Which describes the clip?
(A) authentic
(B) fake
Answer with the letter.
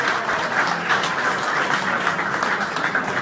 A